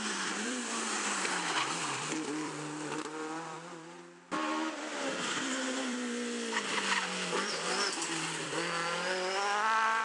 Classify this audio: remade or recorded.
remade